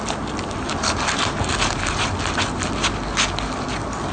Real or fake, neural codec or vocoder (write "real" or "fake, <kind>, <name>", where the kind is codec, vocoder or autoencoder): real